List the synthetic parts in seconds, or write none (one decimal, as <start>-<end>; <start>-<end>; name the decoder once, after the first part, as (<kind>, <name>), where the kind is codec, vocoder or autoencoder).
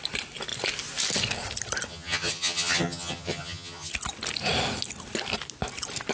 1.9-3.9 (vocoder, HiFi-GAN)